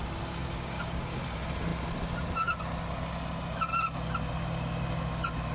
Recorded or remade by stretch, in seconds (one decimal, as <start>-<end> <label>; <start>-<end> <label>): 0.0-0.4 recorded; 0.4-1.2 remade; 1.2-5.5 recorded